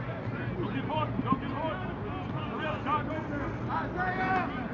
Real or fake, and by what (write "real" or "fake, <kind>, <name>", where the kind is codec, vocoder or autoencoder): real